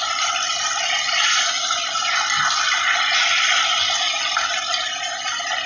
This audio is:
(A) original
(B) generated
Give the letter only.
A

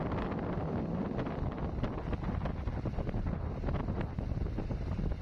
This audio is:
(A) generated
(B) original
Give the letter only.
B